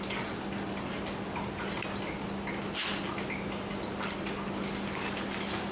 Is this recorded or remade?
recorded